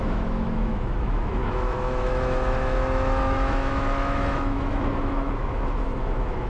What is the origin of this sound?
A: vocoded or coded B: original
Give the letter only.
A